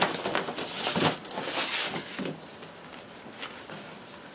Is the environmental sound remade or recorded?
recorded